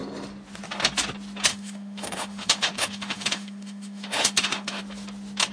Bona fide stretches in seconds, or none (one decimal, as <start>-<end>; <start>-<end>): 0.0-1.5; 4.8-5.5